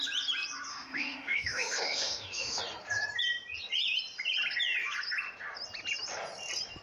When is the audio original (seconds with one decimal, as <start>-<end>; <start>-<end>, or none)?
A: 0.0-0.7; 2.6-6.8